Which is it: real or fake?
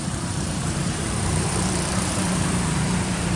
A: fake